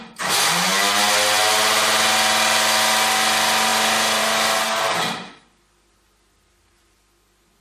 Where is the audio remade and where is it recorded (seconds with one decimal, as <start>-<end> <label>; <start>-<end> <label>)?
0.0-7.6 recorded

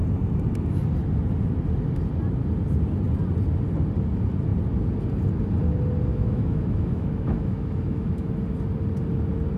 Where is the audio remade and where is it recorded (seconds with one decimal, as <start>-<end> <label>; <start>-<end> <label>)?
0.0-6.1 recorded; 6.1-8.3 remade; 8.3-9.6 recorded

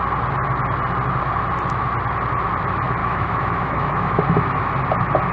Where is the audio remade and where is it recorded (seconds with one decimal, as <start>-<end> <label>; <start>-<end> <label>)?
0.0-3.0 recorded; 3.0-4.2 remade; 4.2-5.3 recorded